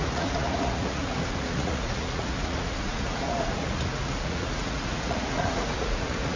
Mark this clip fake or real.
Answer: fake